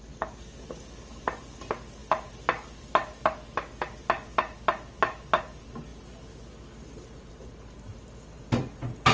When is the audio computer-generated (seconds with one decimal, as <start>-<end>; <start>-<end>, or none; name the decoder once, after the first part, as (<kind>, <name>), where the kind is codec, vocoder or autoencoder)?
none